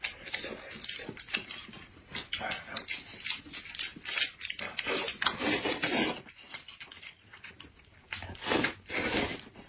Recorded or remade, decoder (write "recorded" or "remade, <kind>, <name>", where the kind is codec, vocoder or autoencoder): recorded